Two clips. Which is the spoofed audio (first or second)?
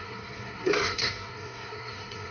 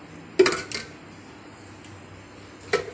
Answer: first